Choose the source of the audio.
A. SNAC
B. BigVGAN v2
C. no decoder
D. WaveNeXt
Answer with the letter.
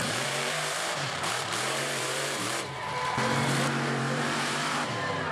B